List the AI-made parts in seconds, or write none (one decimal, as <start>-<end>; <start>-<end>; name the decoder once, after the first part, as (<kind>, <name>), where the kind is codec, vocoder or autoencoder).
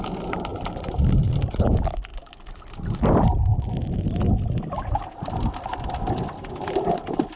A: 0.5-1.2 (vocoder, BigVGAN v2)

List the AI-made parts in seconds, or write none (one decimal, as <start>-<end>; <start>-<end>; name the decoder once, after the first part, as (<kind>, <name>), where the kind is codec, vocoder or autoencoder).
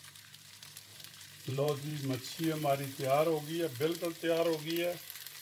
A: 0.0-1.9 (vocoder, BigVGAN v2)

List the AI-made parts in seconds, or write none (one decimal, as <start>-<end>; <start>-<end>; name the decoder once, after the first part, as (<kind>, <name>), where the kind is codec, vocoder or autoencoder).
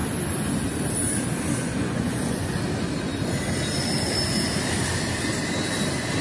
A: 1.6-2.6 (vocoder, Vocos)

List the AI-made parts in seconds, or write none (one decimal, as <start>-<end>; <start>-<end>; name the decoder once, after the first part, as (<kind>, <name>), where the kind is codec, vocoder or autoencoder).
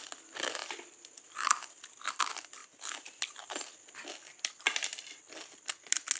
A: none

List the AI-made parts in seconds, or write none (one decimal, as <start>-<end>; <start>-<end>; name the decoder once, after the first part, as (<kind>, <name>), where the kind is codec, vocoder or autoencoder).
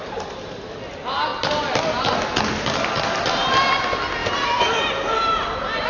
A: none